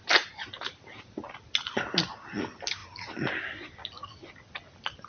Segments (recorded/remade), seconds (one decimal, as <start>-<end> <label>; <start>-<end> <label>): 0.0-1.0 remade; 1.0-5.1 recorded